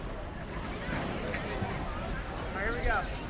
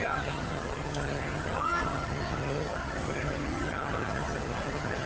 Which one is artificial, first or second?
second